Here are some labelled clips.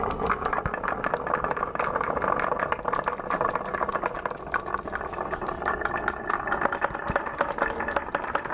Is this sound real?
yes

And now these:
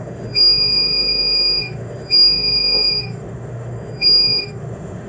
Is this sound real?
no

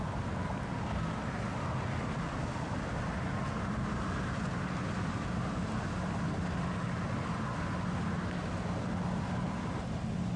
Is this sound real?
yes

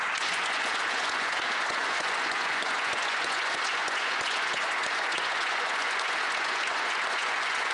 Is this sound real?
no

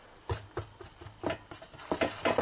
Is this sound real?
yes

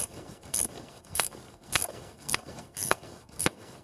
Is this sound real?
no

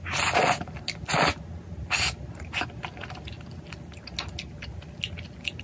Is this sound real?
yes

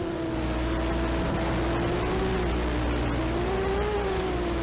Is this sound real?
yes